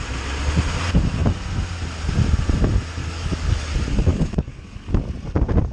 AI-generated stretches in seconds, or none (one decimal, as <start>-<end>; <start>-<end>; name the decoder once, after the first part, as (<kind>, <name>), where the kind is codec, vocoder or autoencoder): 3.0-3.6 (codec, DAC); 4.1-4.9